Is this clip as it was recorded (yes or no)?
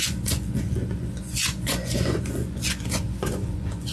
no